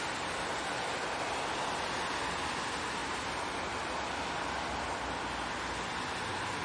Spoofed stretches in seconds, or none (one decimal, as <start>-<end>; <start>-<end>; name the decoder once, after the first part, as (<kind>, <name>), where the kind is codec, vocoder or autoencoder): none